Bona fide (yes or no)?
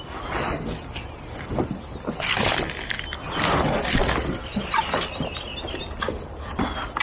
yes